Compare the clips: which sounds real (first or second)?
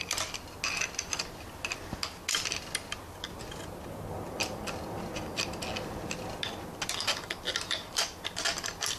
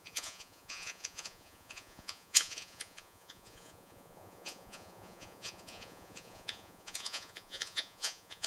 first